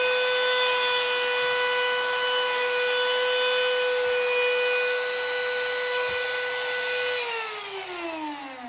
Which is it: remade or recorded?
recorded